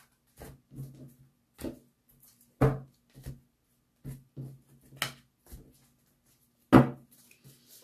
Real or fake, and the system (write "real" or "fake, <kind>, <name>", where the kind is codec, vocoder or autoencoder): real